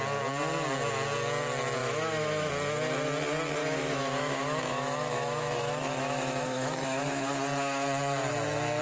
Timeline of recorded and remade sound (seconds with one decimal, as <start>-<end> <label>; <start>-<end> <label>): 0.0-1.8 recorded; 1.8-2.5 remade; 2.5-3.6 recorded; 3.6-7.3 remade; 7.3-8.8 recorded